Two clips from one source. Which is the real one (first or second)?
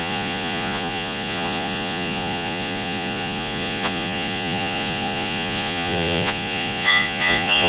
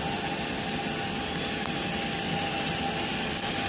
second